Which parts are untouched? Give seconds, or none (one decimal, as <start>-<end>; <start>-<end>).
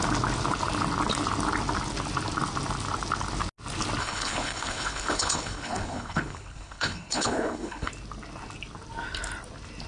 0.0-4.0; 7.9-9.9